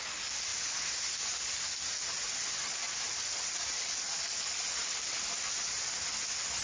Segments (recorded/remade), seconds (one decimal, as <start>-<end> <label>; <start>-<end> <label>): 0.0-6.6 recorded